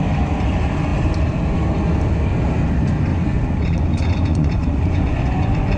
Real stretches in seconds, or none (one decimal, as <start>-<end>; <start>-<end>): 0.0-3.1